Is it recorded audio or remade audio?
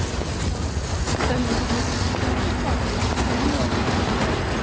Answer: recorded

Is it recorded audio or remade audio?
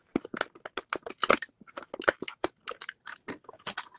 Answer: recorded